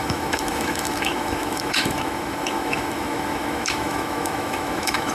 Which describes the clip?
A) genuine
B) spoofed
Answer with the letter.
B